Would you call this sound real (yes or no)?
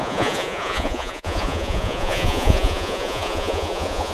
no